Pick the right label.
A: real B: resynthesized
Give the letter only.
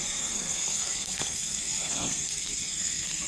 B